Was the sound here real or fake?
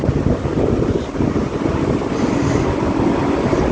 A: real